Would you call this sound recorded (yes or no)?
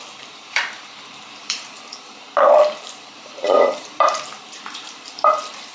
no